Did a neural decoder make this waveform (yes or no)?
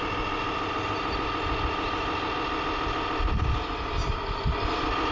no